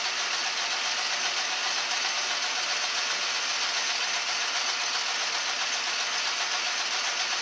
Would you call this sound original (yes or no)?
yes